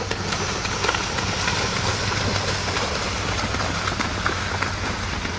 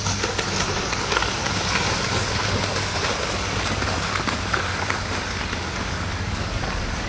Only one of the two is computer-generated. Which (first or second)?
second